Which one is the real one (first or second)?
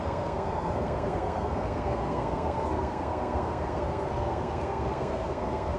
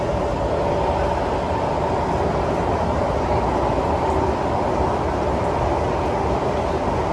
second